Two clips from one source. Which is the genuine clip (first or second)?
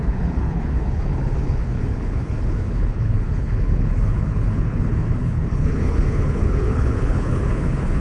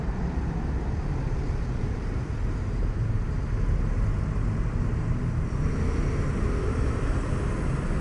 second